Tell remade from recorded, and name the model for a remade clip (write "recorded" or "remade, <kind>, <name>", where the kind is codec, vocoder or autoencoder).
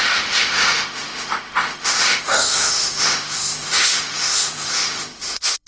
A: remade, autoencoder, DAC-VAE